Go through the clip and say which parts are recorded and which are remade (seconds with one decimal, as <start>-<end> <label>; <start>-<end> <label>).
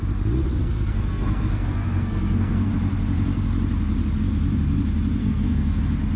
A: 0.0-0.6 recorded; 0.6-2.7 remade; 2.7-5.2 recorded; 5.2-5.8 remade; 5.8-6.2 recorded